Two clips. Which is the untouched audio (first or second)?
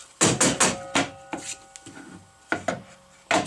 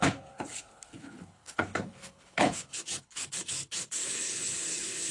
first